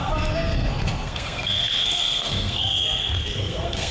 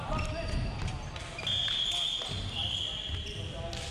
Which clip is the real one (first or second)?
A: second